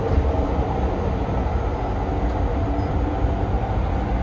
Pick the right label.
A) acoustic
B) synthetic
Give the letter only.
A